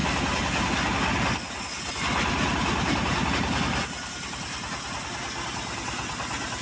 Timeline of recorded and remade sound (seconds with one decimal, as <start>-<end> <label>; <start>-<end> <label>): 0.0-6.6 recorded